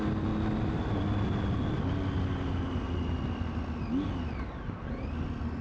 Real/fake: real